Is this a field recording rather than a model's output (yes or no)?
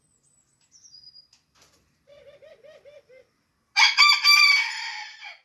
yes